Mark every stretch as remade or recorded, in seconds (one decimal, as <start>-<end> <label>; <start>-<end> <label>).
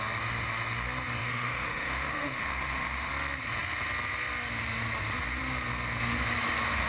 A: 0.0-1.2 recorded; 1.2-3.1 remade; 3.1-6.9 recorded